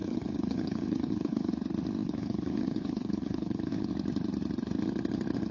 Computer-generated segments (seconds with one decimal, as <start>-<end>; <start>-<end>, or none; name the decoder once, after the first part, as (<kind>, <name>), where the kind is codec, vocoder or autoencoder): 0.0-1.5 (codec, HILCodec); 2.0-3.9